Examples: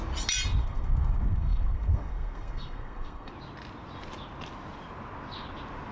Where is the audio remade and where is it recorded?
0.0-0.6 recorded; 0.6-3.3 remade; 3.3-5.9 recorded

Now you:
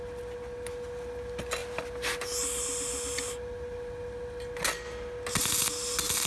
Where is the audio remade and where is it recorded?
0.0-6.3 recorded